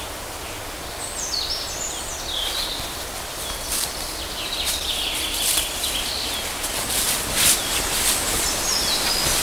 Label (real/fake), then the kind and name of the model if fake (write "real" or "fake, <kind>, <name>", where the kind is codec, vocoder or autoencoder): real